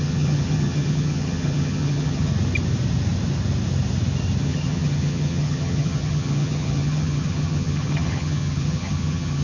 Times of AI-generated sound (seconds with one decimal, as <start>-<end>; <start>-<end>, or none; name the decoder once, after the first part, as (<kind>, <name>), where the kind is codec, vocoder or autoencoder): 0.0-2.3 (vocoder, HiFi-GAN); 4.4-9.4